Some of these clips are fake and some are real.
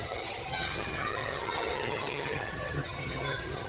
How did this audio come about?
fake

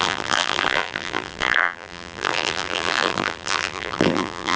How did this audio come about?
fake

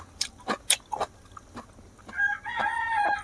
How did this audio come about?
real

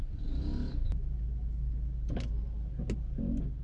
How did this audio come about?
real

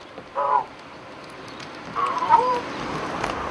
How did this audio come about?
fake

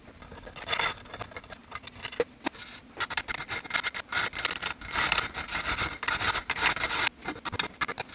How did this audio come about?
real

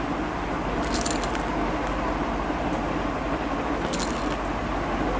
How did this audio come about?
real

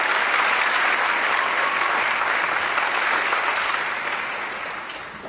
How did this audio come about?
real